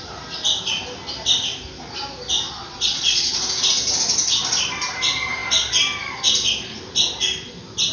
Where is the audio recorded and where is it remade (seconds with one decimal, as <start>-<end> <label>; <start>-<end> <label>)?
0.0-2.5 recorded; 2.5-3.4 remade; 3.4-7.9 recorded